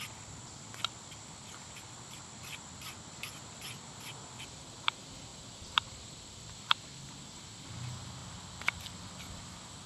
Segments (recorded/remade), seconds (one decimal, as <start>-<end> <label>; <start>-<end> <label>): 0.0-9.9 recorded